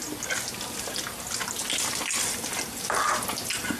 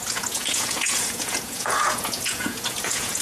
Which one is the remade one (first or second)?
second